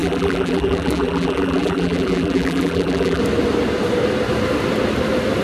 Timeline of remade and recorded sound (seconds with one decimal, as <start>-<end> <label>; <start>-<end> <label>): 0.0-3.2 remade; 3.2-5.4 recorded